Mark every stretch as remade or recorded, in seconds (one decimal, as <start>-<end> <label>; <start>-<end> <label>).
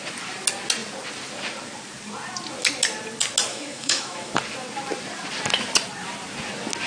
0.0-3.5 recorded; 3.5-4.3 remade; 4.3-6.9 recorded